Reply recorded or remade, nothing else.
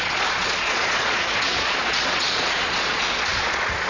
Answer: remade